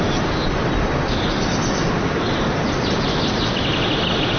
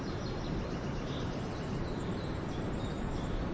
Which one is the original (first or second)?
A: first